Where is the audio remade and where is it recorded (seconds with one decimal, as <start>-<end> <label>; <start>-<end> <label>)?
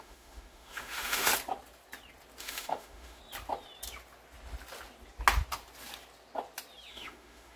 0.0-1.3 remade; 1.3-2.4 recorded; 2.4-3.2 remade; 3.2-6.9 recorded; 6.9-7.6 remade